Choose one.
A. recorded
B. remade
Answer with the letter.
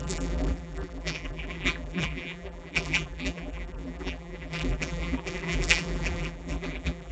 B